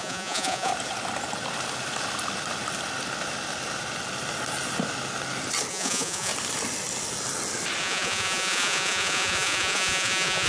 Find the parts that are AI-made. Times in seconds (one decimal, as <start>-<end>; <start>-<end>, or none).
0.0-0.7; 5.7-6.3; 7.8-10.5